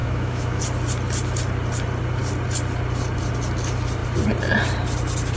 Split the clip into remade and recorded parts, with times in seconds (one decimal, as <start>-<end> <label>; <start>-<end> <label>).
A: 0.0-0.6 remade; 0.6-5.4 recorded